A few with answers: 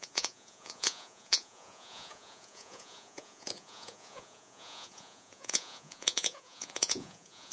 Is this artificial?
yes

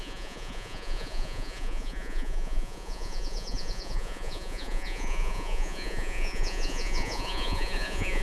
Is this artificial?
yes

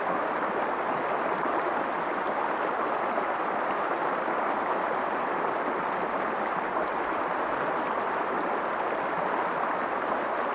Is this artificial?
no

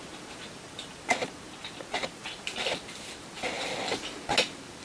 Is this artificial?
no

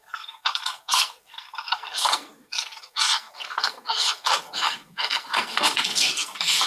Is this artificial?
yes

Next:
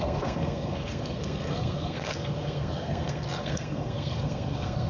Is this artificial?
yes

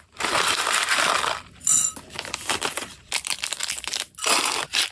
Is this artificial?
no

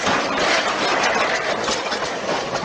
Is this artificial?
no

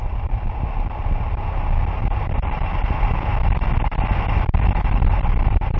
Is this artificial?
no